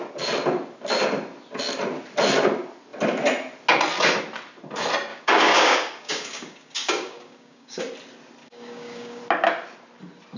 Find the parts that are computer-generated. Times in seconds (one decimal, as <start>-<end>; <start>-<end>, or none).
5.1-7.8; 8.4-9.2